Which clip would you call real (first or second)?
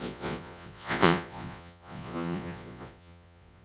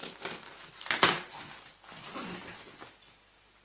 second